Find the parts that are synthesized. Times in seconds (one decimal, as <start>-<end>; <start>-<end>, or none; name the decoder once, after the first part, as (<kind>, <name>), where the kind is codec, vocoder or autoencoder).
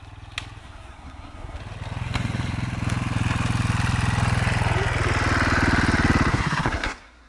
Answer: 0.6-1.6 (codec, SNAC); 6.3-7.3